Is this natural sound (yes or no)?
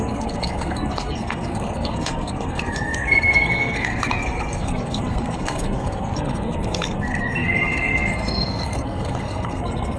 no